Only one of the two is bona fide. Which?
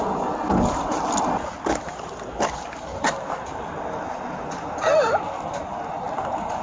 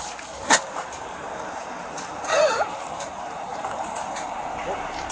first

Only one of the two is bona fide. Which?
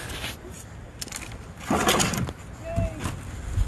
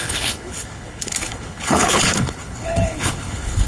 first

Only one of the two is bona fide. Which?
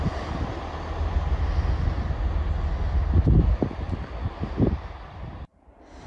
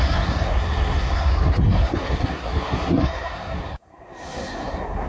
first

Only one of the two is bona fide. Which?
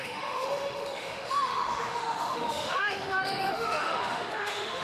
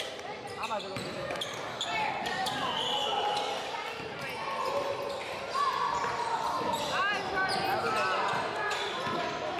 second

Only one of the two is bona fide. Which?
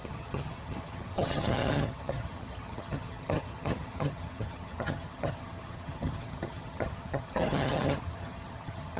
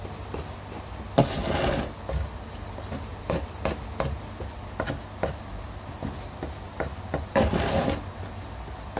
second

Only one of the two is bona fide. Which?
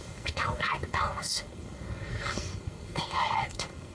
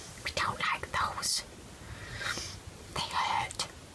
second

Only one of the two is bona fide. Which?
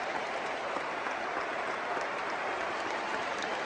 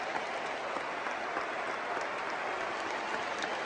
second